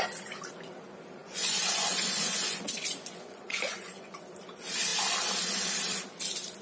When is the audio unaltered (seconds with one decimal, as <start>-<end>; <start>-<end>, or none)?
0.0-1.2; 4.2-6.6